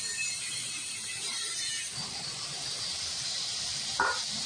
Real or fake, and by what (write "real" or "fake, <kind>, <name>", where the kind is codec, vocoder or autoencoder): fake, vocoder, BigVGAN v2